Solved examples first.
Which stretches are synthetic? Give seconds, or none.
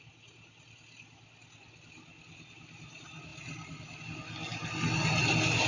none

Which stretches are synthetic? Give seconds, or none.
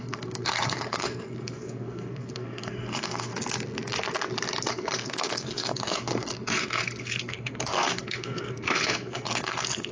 0.0-3.3 (codec, SNAC); 4.7-9.9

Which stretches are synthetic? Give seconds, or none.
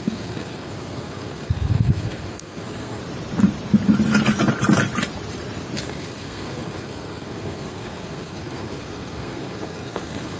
0.0-3.0 (codec, SNAC); 5.8-10.4